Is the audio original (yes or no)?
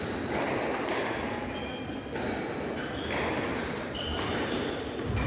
yes